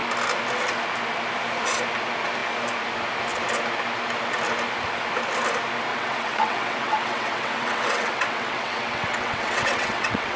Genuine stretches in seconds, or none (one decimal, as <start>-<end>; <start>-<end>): 0.0-5.9